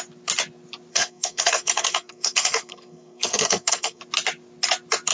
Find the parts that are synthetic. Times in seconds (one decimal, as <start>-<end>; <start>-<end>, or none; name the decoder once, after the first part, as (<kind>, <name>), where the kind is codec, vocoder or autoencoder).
0.9-4.0 (codec, SNAC)